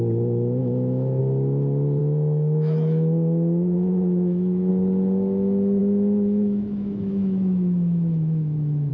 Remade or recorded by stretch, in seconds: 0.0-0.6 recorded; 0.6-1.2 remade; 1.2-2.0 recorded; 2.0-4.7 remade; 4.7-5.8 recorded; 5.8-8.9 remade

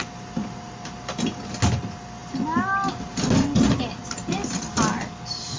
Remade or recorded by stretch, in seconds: 0.0-5.6 recorded

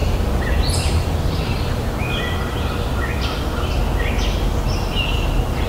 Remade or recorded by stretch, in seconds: 0.0-5.7 recorded

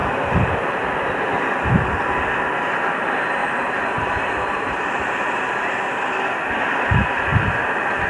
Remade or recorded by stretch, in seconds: 0.0-0.9 remade; 0.9-3.4 recorded; 3.4-5.8 remade; 5.8-8.1 recorded

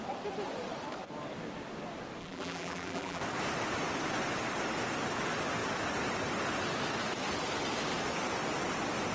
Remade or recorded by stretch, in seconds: 0.0-2.2 recorded; 2.2-3.2 remade; 3.2-9.1 recorded

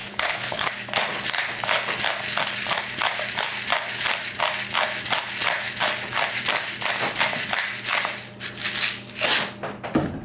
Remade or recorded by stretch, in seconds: 0.0-0.7 remade; 0.7-10.2 recorded

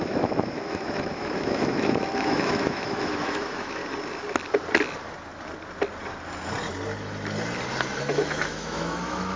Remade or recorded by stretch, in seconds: 0.0-3.8 remade; 3.8-8.0 recorded; 8.0-9.4 remade

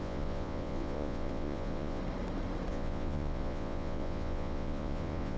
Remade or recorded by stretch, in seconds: 0.0-2.0 remade; 2.0-2.7 recorded; 2.7-5.4 remade